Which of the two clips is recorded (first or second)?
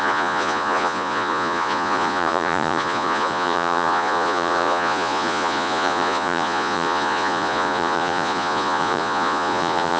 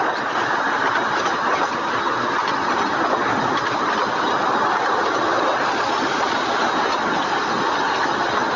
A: second